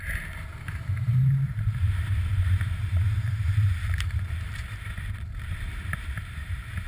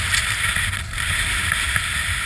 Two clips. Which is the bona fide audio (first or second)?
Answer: second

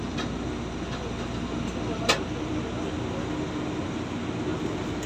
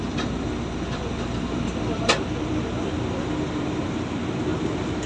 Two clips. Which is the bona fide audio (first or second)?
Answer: first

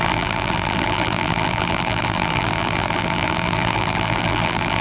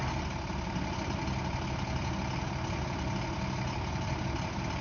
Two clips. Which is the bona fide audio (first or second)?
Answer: second